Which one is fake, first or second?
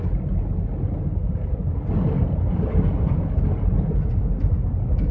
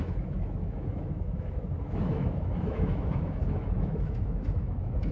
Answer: second